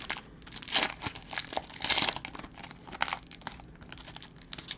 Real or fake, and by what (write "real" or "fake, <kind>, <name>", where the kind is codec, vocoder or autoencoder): real